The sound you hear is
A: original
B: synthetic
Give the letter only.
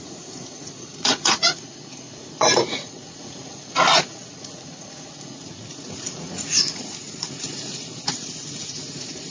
B